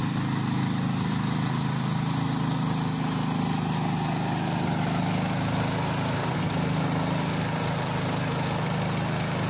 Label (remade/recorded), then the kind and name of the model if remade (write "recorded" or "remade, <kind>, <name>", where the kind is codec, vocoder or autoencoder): recorded